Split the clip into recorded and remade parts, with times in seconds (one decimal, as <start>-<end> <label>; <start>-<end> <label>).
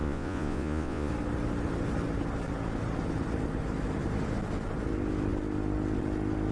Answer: 0.0-1.1 remade; 1.1-6.5 recorded